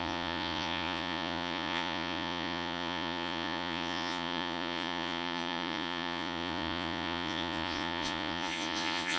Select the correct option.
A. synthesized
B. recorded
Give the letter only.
A